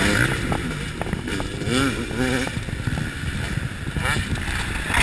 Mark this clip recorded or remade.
recorded